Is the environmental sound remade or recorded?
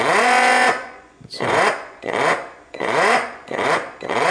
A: remade